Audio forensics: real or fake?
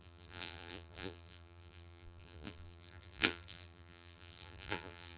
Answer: fake